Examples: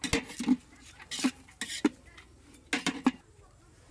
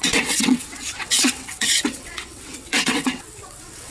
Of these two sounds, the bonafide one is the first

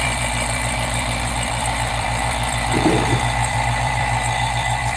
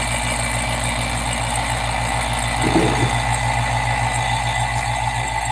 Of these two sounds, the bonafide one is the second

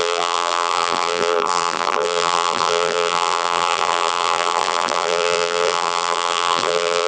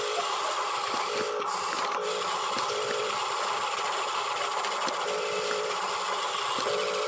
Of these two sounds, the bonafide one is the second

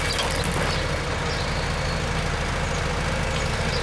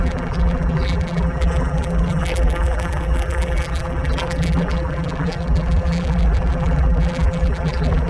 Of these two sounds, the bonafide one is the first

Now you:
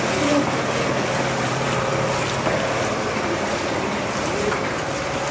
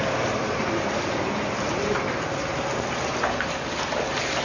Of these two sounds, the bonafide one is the second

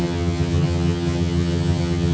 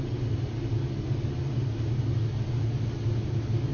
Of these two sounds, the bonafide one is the second